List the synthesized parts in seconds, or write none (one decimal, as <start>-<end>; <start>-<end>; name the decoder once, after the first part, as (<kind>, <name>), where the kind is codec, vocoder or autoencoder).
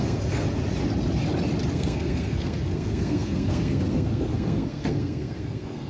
0.0-0.6 (codec, SNAC); 1.7-5.9